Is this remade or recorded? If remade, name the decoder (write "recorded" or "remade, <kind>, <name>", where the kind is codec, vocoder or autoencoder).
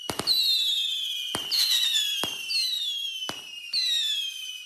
remade, vocoder, BigVGAN v2